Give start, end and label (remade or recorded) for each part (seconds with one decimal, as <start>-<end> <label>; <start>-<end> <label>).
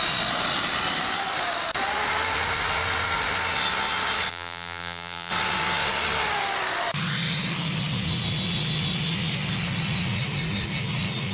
0.0-4.3 recorded; 4.3-5.3 remade; 5.3-11.3 recorded